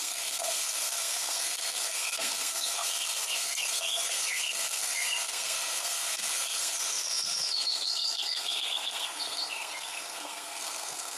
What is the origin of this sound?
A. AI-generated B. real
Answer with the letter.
A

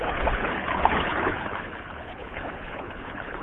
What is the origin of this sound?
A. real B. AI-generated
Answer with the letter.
B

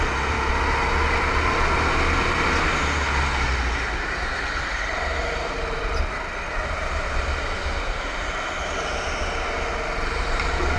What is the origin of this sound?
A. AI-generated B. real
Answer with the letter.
B